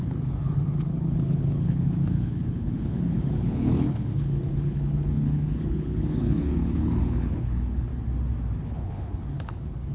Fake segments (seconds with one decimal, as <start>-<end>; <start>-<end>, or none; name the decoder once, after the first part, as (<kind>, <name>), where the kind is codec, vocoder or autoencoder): 0.0-7.9 (codec, HILCodec); 8.6-9.9